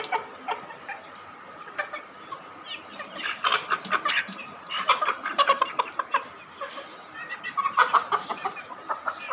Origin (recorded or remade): remade